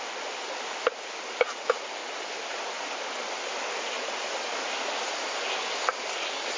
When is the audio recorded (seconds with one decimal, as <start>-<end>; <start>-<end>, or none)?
0.0-6.6